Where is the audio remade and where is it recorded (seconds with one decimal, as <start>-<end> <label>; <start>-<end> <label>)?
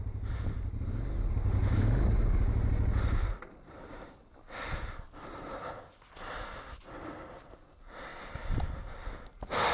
0.0-8.1 recorded; 8.1-8.7 remade; 8.7-9.7 recorded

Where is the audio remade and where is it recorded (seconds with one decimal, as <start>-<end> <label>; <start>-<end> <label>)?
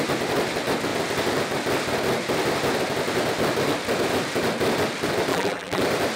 0.0-5.3 recorded; 5.3-5.8 remade; 5.8-6.2 recorded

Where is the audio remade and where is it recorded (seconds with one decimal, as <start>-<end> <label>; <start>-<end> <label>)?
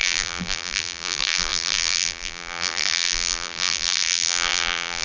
0.0-5.0 remade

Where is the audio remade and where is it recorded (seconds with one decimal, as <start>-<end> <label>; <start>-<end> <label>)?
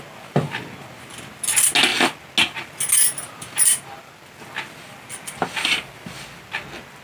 0.0-7.0 recorded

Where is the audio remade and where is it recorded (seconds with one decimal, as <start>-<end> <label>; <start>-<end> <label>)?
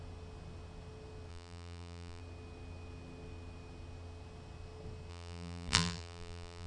0.0-1.3 recorded; 1.3-2.2 remade; 2.2-5.1 recorded; 5.1-6.7 remade